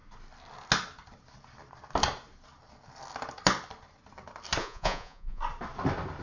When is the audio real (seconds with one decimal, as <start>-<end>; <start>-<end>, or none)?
0.0-4.6; 5.4-6.2